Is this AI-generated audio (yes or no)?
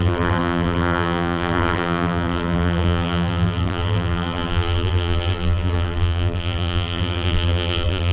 yes